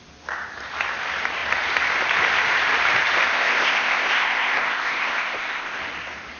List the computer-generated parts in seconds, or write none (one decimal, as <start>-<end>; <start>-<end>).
3.3-5.8